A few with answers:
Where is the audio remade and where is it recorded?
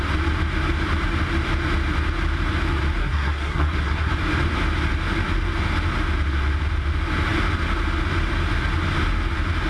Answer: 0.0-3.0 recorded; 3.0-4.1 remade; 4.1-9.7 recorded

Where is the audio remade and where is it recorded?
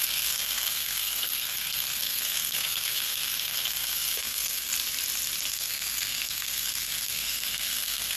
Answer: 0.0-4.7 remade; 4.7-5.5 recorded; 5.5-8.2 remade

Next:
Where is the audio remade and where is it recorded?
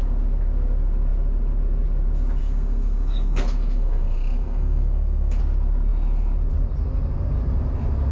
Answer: 0.0-2.4 recorded; 2.4-5.4 remade; 5.4-8.1 recorded